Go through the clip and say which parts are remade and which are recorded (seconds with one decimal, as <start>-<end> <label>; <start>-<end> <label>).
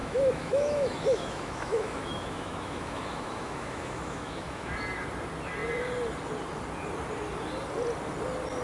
0.0-4.7 remade; 4.7-8.6 recorded